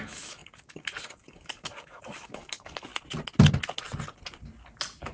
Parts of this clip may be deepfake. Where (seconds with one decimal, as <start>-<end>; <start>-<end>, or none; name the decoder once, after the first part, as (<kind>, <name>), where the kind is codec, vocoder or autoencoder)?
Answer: 0.0-2.9 (codec, DAC)